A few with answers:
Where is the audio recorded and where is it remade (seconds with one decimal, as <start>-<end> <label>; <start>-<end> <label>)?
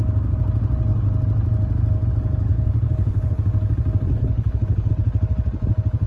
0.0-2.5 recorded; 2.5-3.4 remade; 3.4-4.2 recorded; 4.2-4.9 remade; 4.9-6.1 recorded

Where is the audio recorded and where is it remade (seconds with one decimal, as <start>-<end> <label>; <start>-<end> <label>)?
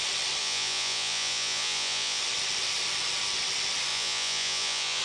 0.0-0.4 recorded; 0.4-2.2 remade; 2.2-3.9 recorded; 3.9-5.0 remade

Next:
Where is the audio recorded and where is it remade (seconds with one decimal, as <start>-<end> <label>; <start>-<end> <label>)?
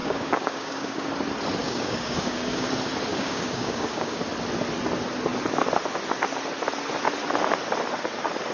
0.0-1.1 remade; 1.1-1.6 recorded; 1.6-2.7 remade; 2.7-3.1 recorded; 3.1-4.2 remade; 4.2-8.5 recorded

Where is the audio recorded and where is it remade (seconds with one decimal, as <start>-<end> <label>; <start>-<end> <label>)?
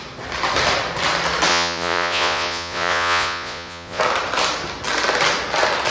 0.0-1.5 recorded; 1.5-4.0 remade; 4.0-5.9 recorded